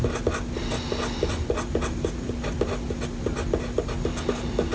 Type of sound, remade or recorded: recorded